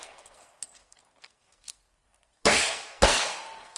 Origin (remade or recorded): remade